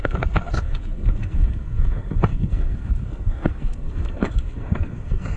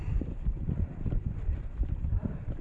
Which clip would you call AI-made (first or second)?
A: first